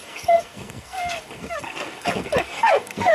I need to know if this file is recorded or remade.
remade